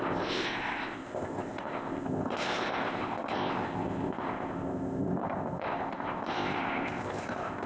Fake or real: fake